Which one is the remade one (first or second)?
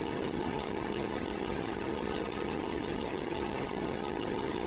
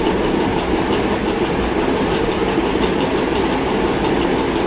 first